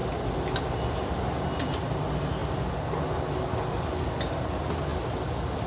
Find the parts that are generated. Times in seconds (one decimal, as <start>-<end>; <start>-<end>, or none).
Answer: none